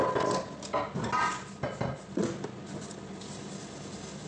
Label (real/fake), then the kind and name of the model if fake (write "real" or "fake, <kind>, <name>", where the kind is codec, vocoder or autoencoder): real